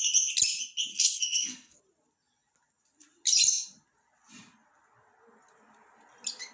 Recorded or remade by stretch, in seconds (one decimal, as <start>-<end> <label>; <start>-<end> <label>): 0.0-0.9 recorded; 0.9-1.8 remade; 1.8-6.5 recorded